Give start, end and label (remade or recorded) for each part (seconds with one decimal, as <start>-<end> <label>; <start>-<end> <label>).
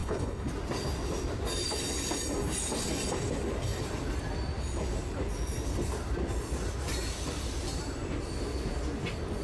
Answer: 0.0-0.5 remade; 0.5-9.4 recorded